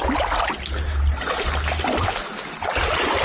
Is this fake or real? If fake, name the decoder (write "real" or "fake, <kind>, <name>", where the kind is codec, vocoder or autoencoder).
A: real